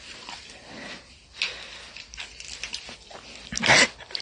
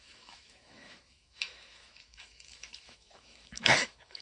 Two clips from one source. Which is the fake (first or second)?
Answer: second